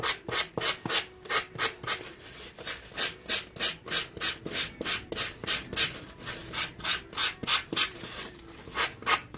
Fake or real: real